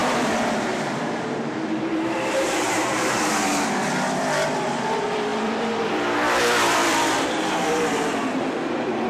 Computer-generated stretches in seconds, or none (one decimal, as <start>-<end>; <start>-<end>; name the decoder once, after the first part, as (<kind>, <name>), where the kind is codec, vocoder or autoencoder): 0.0-9.1 (vocoder, BigVGAN v2)